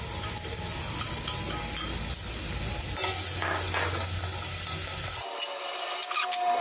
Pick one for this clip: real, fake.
real